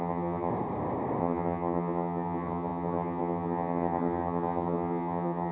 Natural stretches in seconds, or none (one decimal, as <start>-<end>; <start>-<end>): 0.5-1.2